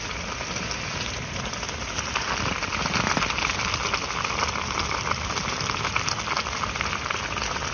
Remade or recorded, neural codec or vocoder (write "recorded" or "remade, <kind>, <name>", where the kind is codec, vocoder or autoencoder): recorded